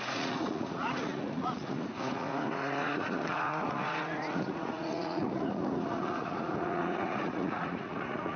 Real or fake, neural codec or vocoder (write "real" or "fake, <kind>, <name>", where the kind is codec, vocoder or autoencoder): fake, vocoder, Vocos